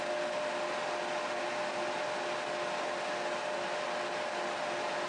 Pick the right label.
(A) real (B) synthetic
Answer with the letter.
A